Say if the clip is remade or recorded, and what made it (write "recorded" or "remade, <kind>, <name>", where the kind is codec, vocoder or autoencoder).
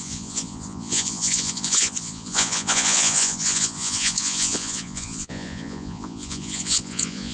remade, vocoder, Vocos